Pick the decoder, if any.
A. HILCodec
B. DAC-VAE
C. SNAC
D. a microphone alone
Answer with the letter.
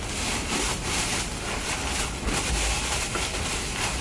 D